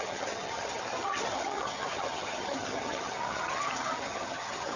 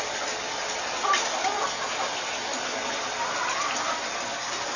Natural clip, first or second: second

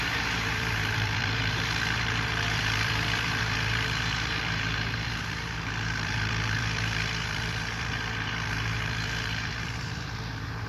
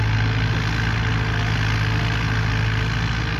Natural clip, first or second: second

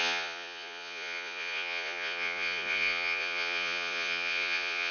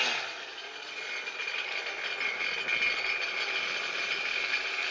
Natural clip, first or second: second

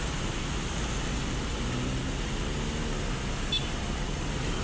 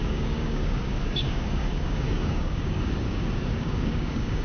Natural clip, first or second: first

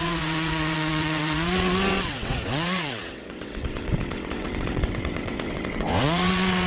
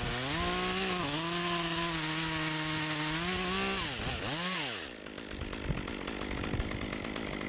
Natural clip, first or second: second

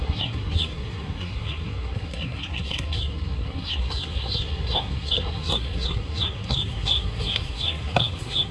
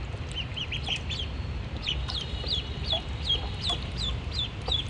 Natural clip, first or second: second